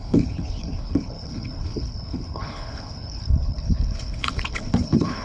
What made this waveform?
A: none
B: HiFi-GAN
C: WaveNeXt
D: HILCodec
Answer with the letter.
D